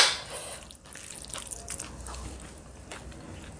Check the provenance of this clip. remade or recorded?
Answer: recorded